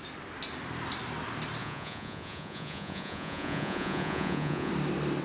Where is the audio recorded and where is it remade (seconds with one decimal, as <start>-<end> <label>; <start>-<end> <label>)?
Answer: 0.0-1.6 recorded; 1.6-4.7 remade; 4.7-5.2 recorded